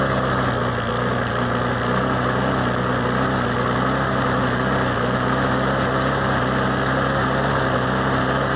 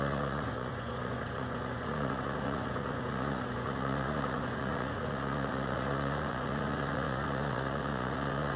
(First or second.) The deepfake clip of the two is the second